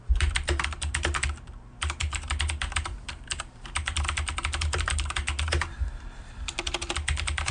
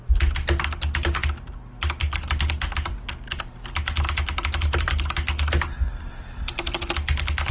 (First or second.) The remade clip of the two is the first